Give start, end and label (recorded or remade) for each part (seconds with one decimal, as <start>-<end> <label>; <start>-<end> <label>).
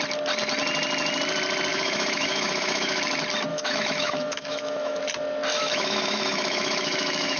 0.0-1.7 recorded; 1.7-3.0 remade; 3.0-3.5 recorded; 3.5-5.0 remade; 5.0-5.5 recorded; 5.5-7.4 remade